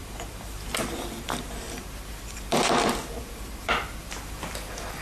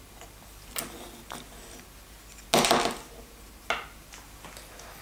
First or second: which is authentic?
second